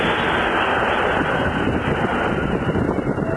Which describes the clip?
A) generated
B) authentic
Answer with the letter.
A